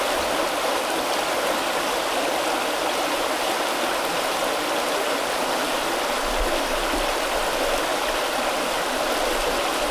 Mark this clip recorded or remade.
recorded